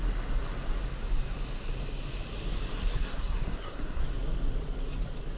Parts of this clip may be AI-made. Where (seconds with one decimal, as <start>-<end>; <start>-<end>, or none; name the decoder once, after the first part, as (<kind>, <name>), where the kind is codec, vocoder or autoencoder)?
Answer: 2.7-4.0 (codec, SNAC)